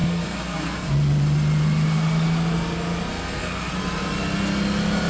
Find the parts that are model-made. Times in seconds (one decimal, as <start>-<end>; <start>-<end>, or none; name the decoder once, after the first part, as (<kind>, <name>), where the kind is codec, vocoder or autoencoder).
0.0-0.9 (codec, SNAC); 3.1-3.7